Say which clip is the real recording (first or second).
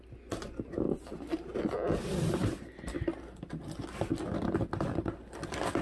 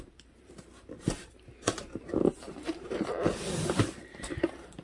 first